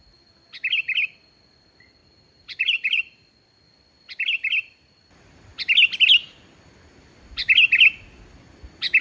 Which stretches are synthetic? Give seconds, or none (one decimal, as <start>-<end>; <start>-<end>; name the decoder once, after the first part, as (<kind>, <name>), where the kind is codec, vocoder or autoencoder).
2.0-3.3 (vocoder, BigVGAN v2)